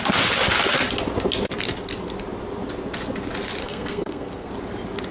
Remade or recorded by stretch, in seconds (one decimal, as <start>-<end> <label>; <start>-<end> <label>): 0.0-3.6 recorded; 3.6-4.5 remade; 4.5-5.1 recorded